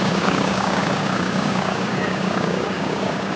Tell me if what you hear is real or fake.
fake